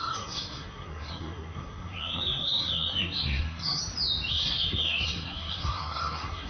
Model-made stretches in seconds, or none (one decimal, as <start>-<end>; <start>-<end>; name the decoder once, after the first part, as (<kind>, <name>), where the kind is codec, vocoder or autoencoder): 0.0-3.8 (codec, SNAC); 4.3-6.5